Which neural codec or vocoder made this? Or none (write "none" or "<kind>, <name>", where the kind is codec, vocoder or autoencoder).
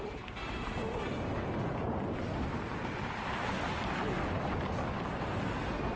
none